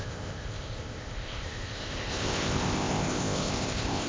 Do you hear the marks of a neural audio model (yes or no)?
yes